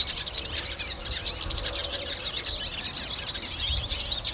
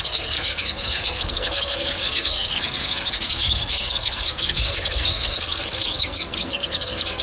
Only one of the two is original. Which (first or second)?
first